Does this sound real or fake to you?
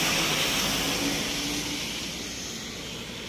real